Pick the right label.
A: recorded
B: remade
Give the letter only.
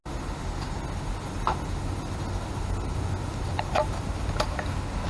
A